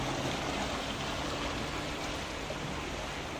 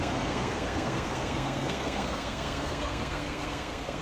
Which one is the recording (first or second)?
first